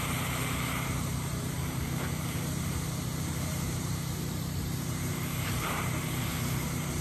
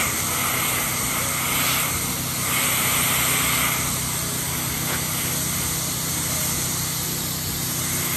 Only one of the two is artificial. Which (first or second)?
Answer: first